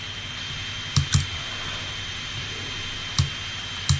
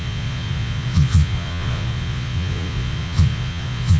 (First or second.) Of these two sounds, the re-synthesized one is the second